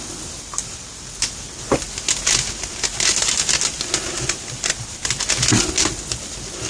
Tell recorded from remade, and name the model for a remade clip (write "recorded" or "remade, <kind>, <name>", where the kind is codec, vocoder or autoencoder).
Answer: recorded